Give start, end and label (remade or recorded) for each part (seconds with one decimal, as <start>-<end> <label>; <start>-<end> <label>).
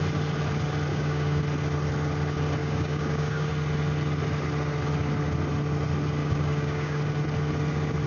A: 0.0-0.9 recorded; 0.9-1.4 remade; 1.4-2.6 recorded; 2.6-3.5 remade; 3.5-6.2 recorded; 6.2-7.0 remade; 7.0-8.1 recorded